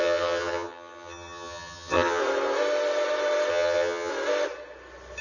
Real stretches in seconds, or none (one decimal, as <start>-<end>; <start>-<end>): 2.2-3.5; 4.1-5.2